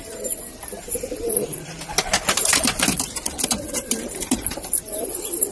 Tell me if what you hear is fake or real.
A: fake